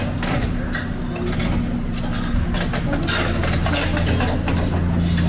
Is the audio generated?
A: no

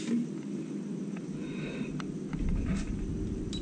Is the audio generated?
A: no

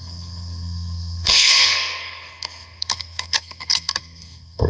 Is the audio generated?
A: yes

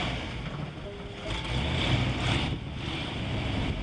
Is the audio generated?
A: no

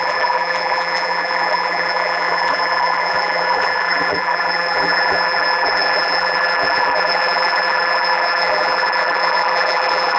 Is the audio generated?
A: yes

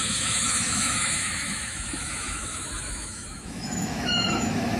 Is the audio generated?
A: yes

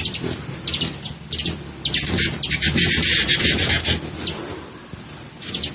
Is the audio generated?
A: no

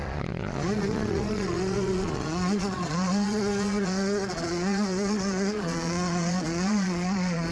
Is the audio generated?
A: yes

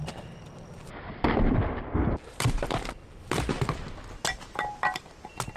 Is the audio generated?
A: no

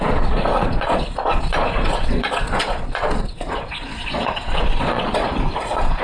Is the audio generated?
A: yes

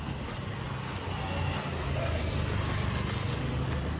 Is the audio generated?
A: no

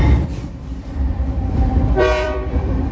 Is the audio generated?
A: yes